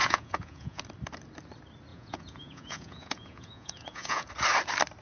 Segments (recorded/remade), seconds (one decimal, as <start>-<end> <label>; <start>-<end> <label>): 0.0-0.8 remade; 0.8-1.9 recorded; 1.9-4.3 remade; 4.3-5.0 recorded